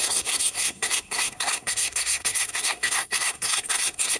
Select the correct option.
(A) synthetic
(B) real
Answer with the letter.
A